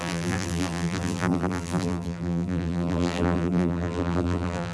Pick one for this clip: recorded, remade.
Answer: remade